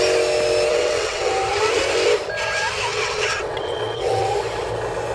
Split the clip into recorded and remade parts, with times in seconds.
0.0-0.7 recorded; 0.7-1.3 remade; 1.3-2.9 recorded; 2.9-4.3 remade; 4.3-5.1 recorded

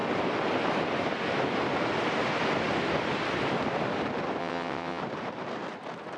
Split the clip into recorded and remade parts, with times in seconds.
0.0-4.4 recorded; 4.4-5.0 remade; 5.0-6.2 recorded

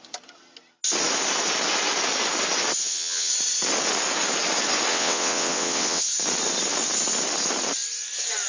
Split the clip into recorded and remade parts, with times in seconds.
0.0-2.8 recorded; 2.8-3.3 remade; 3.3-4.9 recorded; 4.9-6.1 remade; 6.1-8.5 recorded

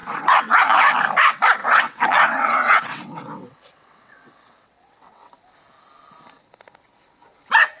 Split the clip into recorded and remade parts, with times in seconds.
0.0-0.9 remade; 0.9-1.6 recorded; 1.6-5.3 remade; 5.3-7.8 recorded